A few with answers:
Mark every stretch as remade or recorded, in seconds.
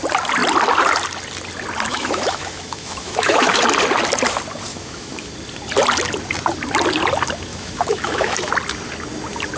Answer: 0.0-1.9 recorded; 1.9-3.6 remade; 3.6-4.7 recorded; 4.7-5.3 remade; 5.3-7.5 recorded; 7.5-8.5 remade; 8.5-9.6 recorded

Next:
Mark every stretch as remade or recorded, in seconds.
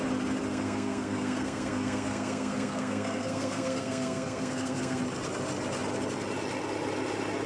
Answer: 0.0-0.5 recorded; 0.5-5.0 remade; 5.0-7.5 recorded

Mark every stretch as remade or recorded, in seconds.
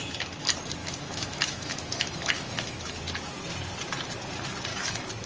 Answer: 0.0-0.8 recorded; 0.8-3.0 remade; 3.0-4.7 recorded; 4.7-5.3 remade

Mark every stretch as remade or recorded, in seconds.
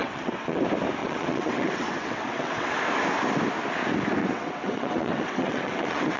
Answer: 0.0-0.6 remade; 0.6-1.0 recorded; 1.0-2.8 remade; 2.8-4.2 recorded; 4.2-6.2 remade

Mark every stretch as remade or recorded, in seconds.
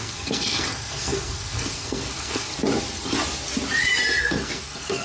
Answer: 0.0-2.5 remade; 2.5-4.2 recorded; 4.2-5.0 remade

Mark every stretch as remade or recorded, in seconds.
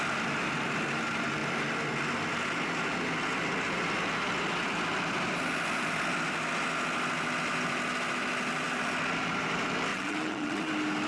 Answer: 0.0-9.9 recorded; 9.9-10.7 remade; 10.7-11.1 recorded